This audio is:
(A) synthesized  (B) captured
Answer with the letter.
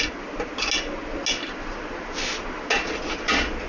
B